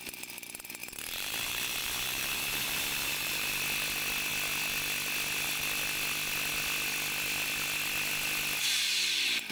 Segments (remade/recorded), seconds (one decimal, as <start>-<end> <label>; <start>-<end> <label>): 0.0-0.8 recorded; 0.8-3.6 remade; 3.6-9.5 recorded